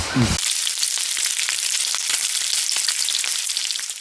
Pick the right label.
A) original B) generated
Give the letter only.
A